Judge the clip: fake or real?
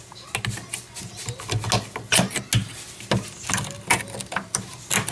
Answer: real